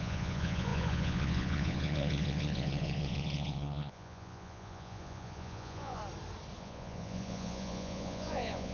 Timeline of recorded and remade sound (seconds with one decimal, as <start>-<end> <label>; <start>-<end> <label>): 0.0-6.0 remade; 6.0-6.6 recorded; 6.6-8.7 remade